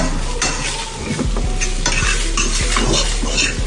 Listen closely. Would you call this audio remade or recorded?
recorded